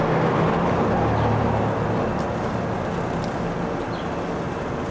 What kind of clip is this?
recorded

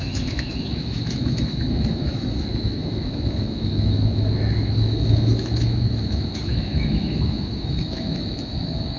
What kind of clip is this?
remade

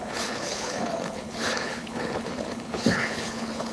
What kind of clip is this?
remade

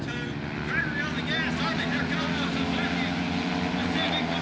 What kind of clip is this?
recorded